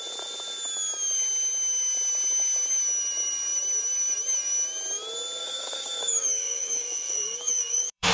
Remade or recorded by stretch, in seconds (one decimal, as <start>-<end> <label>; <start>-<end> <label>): 0.0-5.4 recorded; 5.4-8.1 remade